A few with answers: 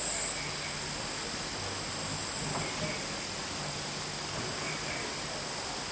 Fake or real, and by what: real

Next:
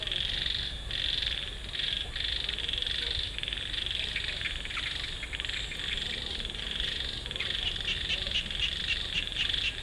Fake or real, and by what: real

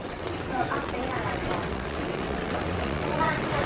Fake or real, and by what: fake, vocoder, WaveNeXt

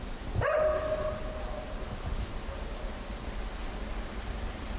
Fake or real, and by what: real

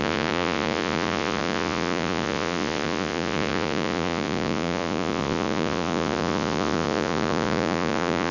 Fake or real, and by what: fake, vocoder, Vocos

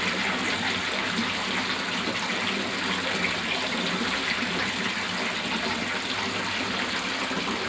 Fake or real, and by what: real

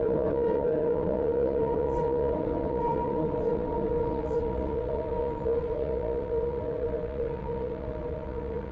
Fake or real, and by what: fake, vocoder, WaveNeXt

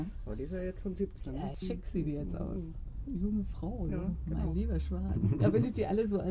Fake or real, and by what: real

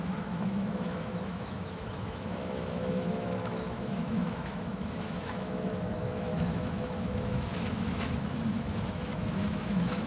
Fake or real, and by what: fake, autoencoder, DAC-VAE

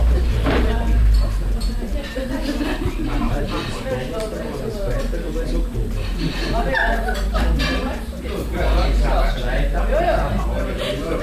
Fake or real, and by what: fake, vocoder, BigVGAN v2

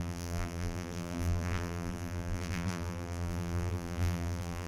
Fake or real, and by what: fake, vocoder, BigVGAN v2